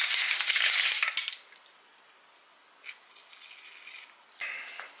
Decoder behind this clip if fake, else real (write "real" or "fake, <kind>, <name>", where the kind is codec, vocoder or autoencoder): real